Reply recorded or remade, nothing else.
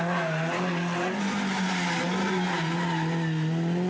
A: recorded